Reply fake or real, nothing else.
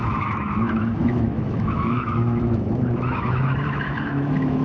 fake